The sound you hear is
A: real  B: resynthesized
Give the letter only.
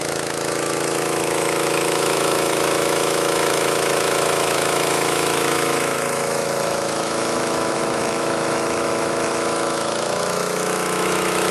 B